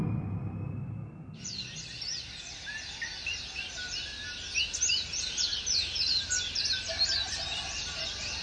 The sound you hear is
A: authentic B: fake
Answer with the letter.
A